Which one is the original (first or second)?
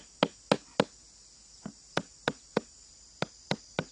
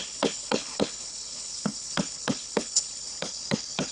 first